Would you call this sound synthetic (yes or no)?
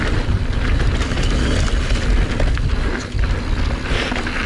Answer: no